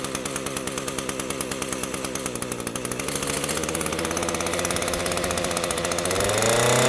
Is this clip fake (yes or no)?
no